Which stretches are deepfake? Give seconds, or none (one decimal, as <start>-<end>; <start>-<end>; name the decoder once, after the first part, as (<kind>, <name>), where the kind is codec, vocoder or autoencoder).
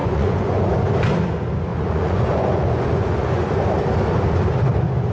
0.0-0.7 (vocoder, Vocos); 1.7-3.5